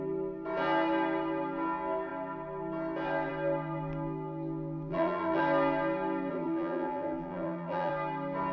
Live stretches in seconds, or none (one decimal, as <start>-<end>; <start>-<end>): 0.0-4.9; 5.4-6.3; 7.9-8.5